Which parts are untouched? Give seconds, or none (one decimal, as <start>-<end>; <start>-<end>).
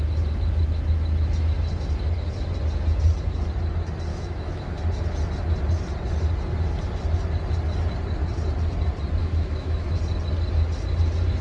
0.0-4.1; 4.8-9.2; 10.0-11.4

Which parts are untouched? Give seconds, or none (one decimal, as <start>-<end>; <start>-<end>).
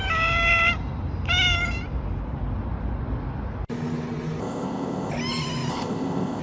0.0-4.4; 5.1-5.7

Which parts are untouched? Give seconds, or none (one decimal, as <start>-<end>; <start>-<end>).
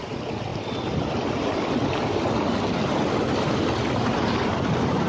0.0-5.1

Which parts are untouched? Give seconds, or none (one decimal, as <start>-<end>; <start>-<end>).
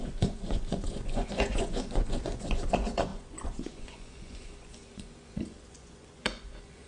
none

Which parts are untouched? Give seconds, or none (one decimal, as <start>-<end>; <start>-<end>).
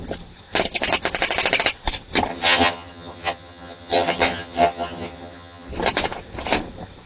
0.0-2.3; 5.7-7.1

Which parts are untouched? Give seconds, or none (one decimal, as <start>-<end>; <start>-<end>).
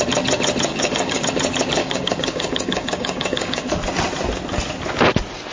0.0-0.7; 1.2-1.8; 3.7-5.5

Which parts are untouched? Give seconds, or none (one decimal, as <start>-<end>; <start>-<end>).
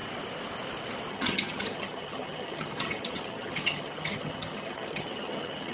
0.0-1.1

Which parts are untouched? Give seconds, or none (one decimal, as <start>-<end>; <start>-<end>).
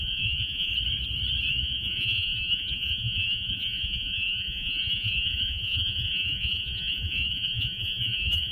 0.7-1.5